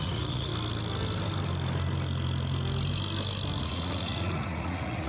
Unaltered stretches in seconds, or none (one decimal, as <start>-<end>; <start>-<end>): 0.5-3.6